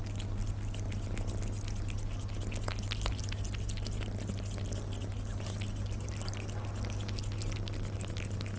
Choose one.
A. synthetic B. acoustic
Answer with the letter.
B